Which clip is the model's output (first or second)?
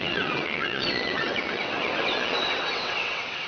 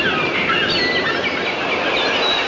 first